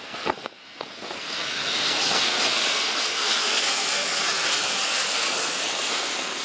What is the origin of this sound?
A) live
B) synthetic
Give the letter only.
B